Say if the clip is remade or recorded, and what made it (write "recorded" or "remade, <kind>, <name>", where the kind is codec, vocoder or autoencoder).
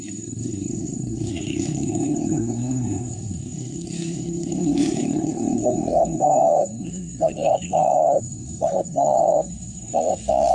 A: remade, codec, SNAC